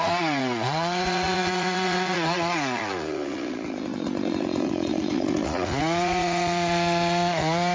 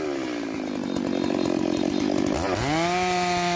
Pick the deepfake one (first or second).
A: first